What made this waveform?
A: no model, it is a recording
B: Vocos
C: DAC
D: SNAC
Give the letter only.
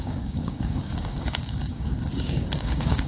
C